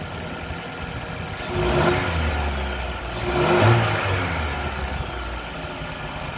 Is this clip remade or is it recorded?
recorded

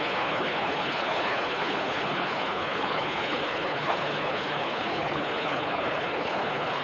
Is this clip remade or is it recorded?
remade